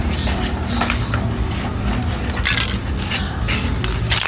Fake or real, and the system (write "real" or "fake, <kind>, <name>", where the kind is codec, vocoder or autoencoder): real